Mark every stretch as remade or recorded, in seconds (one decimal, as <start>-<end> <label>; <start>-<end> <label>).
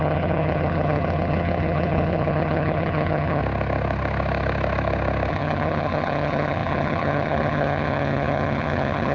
0.0-3.4 remade; 3.4-5.3 recorded; 5.3-9.1 remade